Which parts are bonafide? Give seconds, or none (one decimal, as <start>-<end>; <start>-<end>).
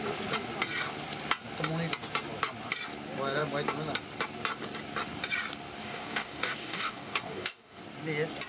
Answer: 0.0-5.8; 7.8-8.5